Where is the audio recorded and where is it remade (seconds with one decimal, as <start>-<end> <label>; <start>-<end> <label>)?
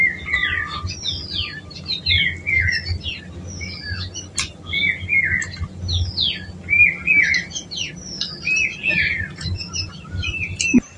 0.0-11.0 recorded